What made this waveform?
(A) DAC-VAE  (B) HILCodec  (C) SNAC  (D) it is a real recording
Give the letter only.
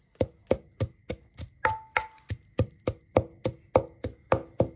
D